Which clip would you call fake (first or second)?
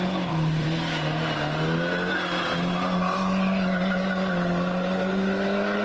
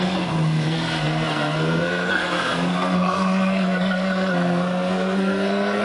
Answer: second